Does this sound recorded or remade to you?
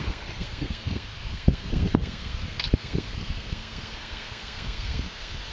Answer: remade